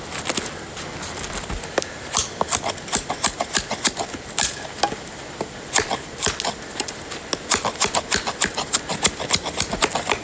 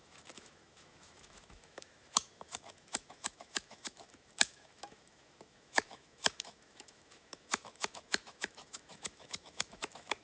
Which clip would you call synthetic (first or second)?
second